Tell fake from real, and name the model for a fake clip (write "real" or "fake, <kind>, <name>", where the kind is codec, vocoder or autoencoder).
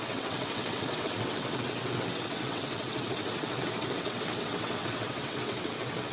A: fake, vocoder, WaveNeXt